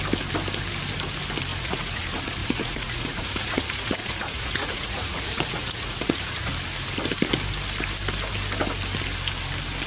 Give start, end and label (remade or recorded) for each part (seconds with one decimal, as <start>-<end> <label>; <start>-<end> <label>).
0.0-1.5 recorded; 1.5-2.0 remade; 2.0-2.4 recorded; 2.4-6.5 remade; 6.5-9.9 recorded

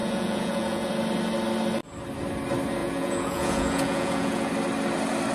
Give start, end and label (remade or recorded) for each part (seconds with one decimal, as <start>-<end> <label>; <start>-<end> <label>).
0.0-0.9 remade; 0.9-2.8 recorded; 2.8-4.5 remade; 4.5-5.3 recorded

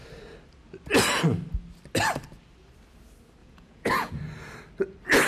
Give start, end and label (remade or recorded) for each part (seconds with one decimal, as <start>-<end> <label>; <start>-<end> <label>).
0.0-3.4 recorded; 3.4-4.1 remade; 4.1-5.3 recorded

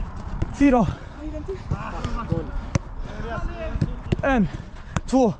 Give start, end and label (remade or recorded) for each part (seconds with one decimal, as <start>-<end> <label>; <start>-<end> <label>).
0.0-1.2 remade; 1.2-4.4 recorded; 4.4-5.4 remade

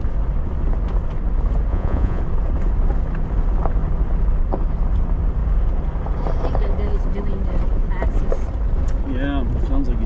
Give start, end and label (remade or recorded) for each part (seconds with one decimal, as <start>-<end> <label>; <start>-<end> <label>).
0.0-1.7 recorded; 1.7-2.2 remade; 2.2-10.1 recorded

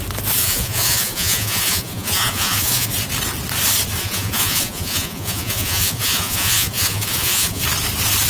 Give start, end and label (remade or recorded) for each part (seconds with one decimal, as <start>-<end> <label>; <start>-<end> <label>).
0.0-0.4 recorded; 0.4-2.9 remade; 2.9-4.0 recorded; 4.0-7.6 remade; 7.6-8.3 recorded

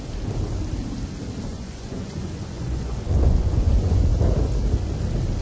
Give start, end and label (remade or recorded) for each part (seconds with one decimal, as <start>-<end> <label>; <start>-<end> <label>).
0.0-1.5 recorded; 1.5-4.1 remade; 4.1-5.4 recorded